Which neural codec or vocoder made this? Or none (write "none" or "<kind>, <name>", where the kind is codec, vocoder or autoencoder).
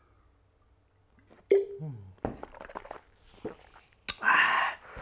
none